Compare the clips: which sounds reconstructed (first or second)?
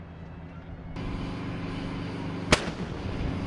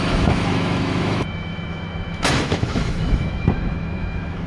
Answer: second